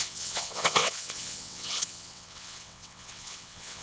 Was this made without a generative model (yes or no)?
no